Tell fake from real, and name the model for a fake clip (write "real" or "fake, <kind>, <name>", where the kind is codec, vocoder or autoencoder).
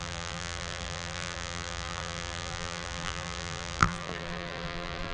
fake, vocoder, BigVGAN v2